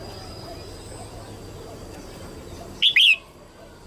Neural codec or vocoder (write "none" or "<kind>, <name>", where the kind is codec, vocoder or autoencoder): none